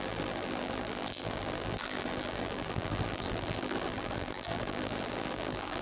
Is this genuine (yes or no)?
no